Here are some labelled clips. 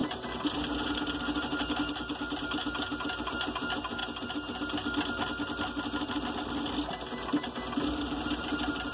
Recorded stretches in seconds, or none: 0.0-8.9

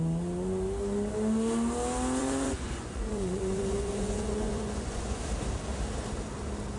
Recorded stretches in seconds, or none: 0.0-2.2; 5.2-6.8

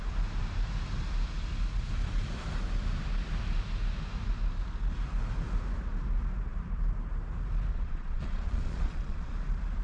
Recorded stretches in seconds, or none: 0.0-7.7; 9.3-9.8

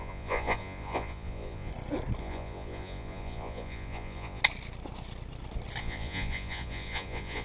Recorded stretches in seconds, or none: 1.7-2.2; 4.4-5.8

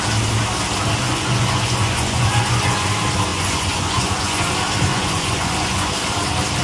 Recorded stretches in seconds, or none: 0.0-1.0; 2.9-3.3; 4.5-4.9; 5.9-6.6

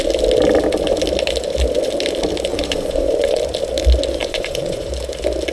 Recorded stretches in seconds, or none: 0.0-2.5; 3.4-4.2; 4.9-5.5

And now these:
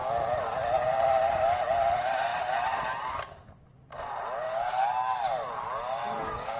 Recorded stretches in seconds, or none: 0.0-6.6